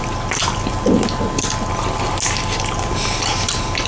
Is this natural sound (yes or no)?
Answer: yes